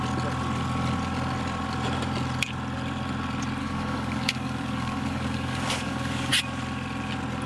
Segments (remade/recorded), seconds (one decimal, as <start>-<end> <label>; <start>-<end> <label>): 0.0-3.6 recorded; 3.6-6.3 remade; 6.3-7.5 recorded